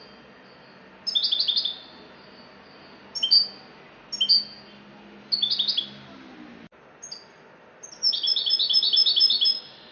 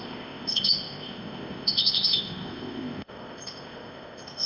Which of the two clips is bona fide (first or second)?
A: first